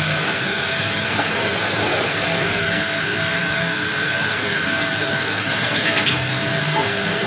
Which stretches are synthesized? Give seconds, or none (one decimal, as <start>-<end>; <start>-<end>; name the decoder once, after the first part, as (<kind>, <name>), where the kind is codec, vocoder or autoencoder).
0.0-7.3 (codec, SNAC)